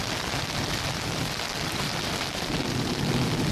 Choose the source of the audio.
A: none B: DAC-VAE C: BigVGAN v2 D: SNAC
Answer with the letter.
A